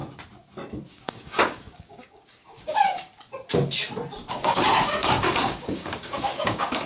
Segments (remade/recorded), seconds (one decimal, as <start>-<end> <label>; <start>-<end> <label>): 0.0-0.9 recorded; 0.9-3.1 remade; 3.1-4.3 recorded; 4.3-6.9 remade